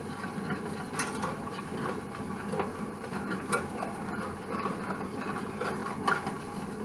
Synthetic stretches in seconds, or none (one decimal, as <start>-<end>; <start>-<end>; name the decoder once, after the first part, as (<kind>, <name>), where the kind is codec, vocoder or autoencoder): 2.7-3.6 (vocoder, BigVGAN v2)